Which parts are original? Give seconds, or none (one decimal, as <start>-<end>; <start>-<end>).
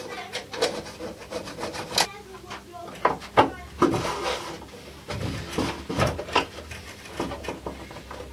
0.0-0.4; 1.9-8.3